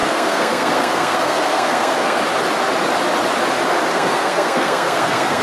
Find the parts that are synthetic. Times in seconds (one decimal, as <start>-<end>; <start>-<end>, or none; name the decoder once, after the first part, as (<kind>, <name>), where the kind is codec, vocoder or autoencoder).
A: 0.0-2.2 (codec, SNAC); 3.9-5.4